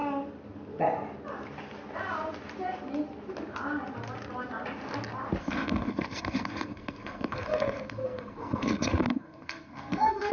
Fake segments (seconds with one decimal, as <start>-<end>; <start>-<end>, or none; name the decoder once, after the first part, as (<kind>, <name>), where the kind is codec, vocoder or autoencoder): 5.4-10.3 (codec, SNAC)